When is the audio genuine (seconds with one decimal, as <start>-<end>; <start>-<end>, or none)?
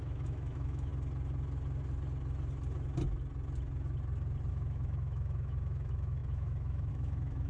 0.9-4.5